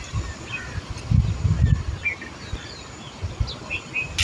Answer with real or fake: real